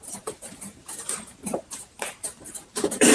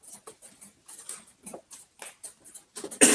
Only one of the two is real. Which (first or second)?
second